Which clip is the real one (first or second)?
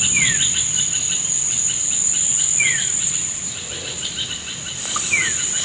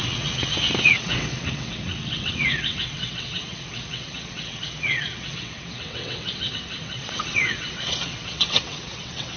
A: first